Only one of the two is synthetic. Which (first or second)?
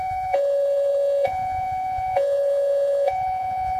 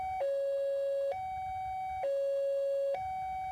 first